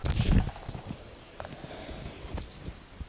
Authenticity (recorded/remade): recorded